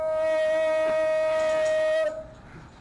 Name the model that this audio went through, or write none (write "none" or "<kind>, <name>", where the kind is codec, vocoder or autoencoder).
none